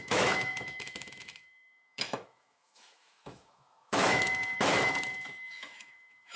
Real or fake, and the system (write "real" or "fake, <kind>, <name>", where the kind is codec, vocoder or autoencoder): fake, autoencoder, DAC-VAE